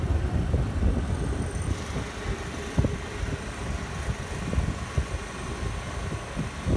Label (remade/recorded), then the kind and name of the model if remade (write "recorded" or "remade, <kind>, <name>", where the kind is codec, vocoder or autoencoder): recorded